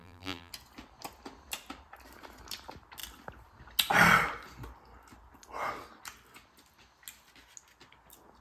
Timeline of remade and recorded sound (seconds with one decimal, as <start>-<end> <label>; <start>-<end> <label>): 0.0-0.5 remade; 0.5-8.4 recorded